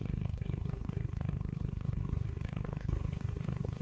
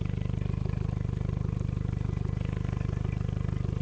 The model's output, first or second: first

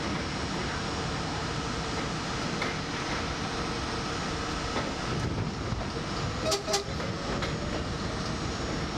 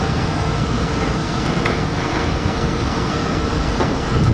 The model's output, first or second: second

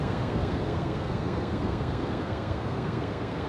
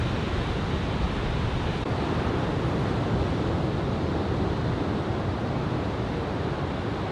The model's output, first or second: first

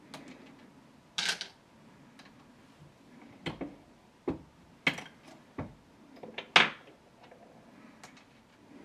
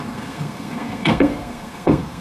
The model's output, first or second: second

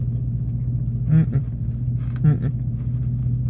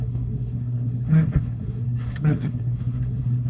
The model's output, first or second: second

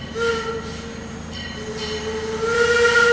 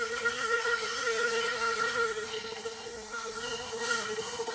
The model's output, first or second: second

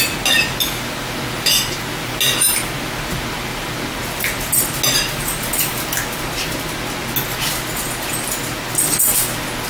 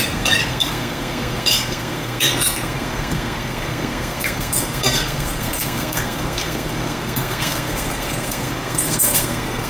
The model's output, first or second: second